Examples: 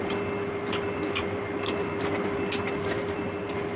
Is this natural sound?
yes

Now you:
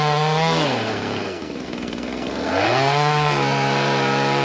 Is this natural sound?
no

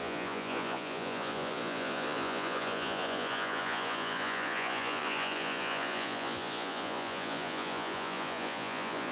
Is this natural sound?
no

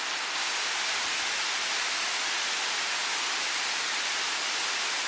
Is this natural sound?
yes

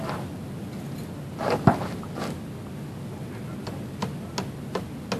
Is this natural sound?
yes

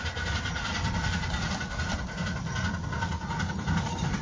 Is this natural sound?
yes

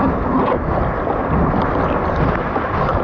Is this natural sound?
yes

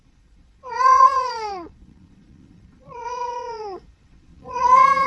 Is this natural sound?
no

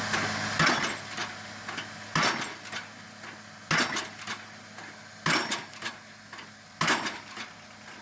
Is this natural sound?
yes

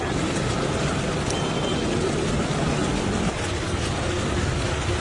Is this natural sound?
yes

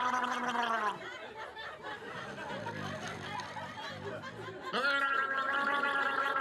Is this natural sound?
yes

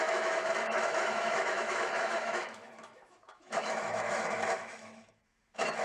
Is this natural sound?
no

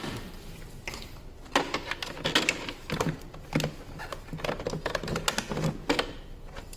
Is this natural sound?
yes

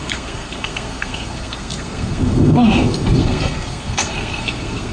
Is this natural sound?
no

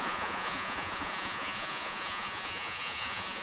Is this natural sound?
no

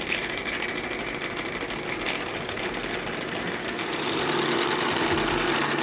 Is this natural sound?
yes